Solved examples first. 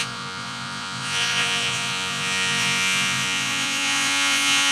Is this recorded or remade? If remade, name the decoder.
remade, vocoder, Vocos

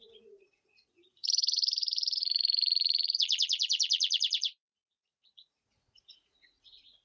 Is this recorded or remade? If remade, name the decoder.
remade, vocoder, Vocos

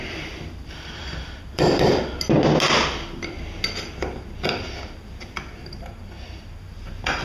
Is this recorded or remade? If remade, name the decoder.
recorded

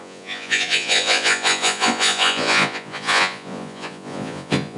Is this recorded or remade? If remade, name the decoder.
remade, vocoder, Vocos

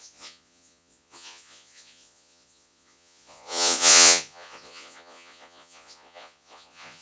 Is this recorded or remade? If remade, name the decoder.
remade, vocoder, Vocos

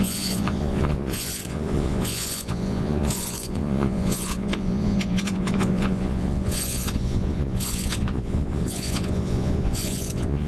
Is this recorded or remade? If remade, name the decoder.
remade, vocoder, Vocos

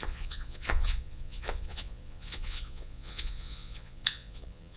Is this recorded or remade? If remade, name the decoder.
remade, vocoder, Vocos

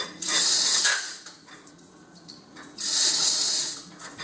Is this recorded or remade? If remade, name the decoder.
remade, vocoder, Vocos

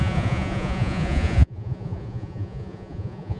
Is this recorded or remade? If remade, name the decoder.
remade, vocoder, Vocos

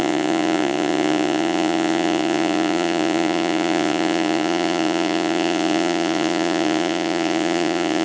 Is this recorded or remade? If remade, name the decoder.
remade, vocoder, Vocos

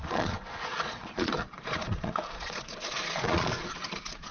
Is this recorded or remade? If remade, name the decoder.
remade, vocoder, Vocos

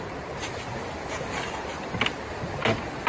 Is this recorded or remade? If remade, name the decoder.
recorded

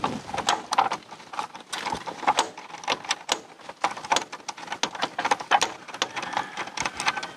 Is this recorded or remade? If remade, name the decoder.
recorded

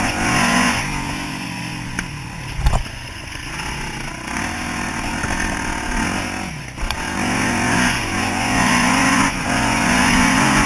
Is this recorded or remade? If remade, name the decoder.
remade, vocoder, Vocos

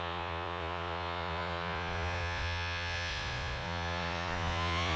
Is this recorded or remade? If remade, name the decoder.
remade, vocoder, Vocos